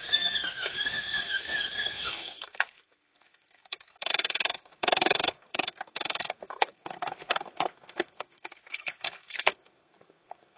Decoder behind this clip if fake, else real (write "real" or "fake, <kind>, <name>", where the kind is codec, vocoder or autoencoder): fake, codec, SNAC